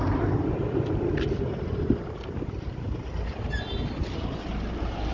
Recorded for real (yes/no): yes